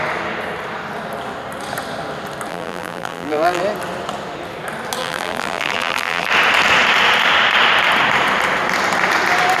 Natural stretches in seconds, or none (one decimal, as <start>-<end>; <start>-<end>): 0.0-2.5; 3.6-5.0; 6.3-9.6

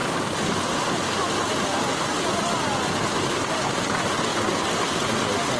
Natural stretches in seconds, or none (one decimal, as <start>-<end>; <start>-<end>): 0.0-5.6

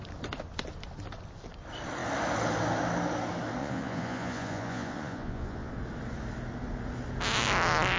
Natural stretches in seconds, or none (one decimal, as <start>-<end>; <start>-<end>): 0.0-3.6; 5.7-8.0

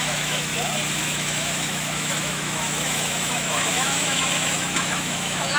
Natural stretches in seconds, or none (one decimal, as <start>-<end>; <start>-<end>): 0.5-1.0

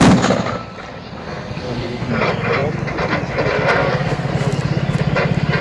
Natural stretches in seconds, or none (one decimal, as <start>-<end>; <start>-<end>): 0.0-1.2; 2.1-3.8; 4.3-5.6

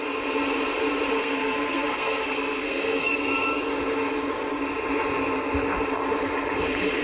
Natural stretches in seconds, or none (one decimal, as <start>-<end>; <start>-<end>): 0.0-1.1; 3.1-7.0

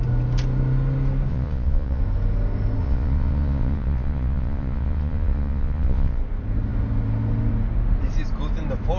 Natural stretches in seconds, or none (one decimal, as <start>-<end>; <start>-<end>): 0.0-1.3; 2.0-2.8; 6.2-9.0